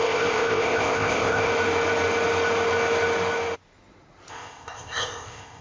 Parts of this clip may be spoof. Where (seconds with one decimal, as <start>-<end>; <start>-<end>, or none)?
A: 0.0-1.5; 4.3-5.6